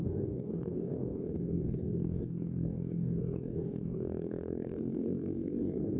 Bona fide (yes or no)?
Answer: no